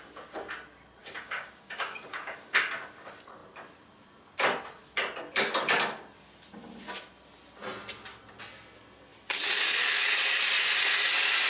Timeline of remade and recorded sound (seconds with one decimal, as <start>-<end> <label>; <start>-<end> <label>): 0.0-1.0 recorded; 1.0-2.7 remade; 2.7-11.5 recorded